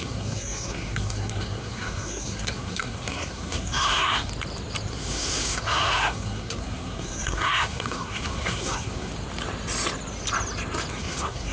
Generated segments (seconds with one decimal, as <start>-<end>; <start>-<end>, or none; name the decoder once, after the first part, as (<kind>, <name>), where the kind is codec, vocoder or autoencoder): 0.0-4.3 (codec, SNAC); 4.9-9.1; 10.9-11.5